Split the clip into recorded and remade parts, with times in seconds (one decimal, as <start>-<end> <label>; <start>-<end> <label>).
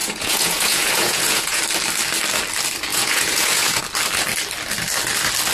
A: 0.0-1.6 remade; 1.6-2.9 recorded; 2.9-3.8 remade; 3.8-5.5 recorded